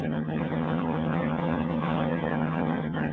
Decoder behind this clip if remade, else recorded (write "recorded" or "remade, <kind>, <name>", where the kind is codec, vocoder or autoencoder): remade, vocoder, HiFi-GAN